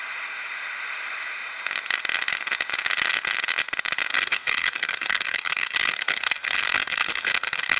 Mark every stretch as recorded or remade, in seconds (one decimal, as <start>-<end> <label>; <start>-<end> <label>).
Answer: 0.0-4.1 recorded; 4.1-7.8 remade